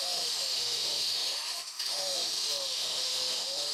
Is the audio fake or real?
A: fake